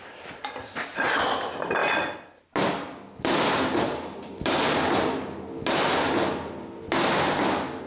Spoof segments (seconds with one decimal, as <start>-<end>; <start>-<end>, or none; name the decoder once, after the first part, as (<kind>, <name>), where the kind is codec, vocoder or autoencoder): none